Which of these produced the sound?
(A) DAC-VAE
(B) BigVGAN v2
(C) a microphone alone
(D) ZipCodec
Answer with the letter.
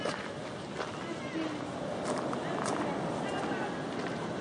C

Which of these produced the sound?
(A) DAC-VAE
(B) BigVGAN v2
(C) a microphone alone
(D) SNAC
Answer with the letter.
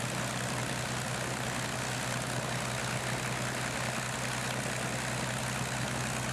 C